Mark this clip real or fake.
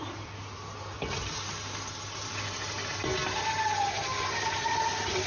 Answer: real